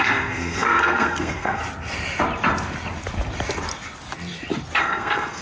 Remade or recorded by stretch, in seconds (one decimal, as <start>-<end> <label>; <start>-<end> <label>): 0.0-1.6 remade; 1.6-4.8 recorded; 4.8-5.4 remade